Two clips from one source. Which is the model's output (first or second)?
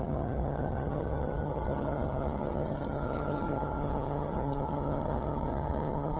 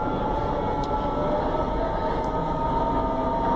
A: first